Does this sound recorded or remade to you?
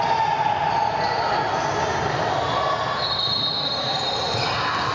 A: recorded